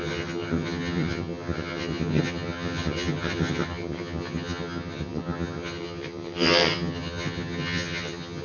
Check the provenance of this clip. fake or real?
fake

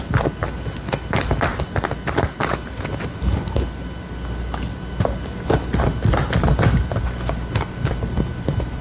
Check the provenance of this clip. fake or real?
real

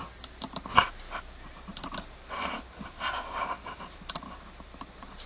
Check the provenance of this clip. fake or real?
real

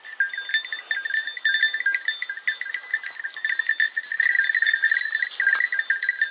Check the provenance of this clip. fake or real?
real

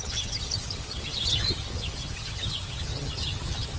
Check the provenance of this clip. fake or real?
fake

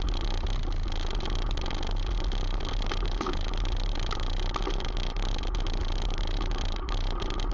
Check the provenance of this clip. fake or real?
real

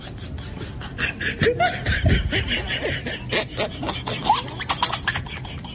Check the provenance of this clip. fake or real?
real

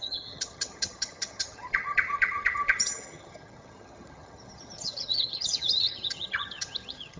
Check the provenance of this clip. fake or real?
fake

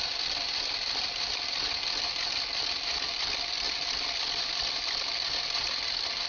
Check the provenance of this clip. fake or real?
real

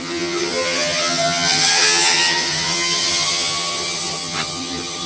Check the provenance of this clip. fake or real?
fake